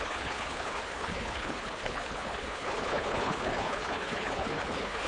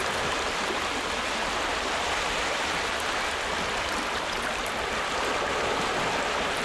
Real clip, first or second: second